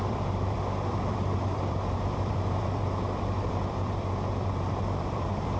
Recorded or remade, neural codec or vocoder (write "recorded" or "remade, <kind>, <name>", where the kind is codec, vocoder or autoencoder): remade, vocoder, BigVGAN v2